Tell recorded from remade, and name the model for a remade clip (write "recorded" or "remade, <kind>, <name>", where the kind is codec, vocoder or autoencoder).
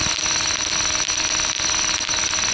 recorded